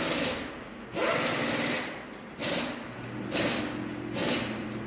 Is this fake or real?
real